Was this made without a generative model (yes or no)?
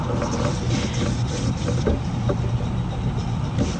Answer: yes